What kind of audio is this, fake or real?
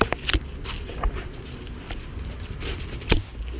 real